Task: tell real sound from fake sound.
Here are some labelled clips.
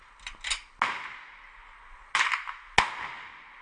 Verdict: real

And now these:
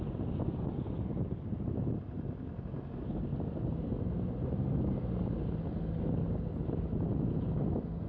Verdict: real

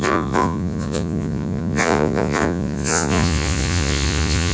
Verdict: fake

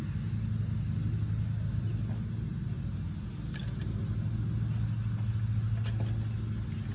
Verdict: real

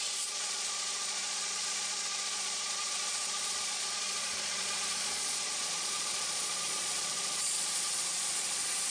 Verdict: fake